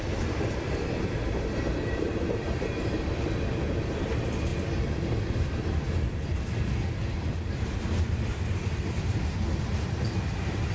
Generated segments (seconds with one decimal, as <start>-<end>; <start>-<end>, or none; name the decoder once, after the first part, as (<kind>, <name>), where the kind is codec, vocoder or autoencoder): 0.0-4.5 (vocoder, BigVGAN v2); 5.2-10.7